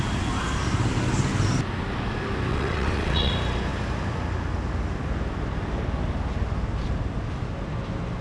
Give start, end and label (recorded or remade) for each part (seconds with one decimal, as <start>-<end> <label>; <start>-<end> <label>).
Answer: 0.0-2.5 recorded; 2.5-3.3 remade; 3.3-8.2 recorded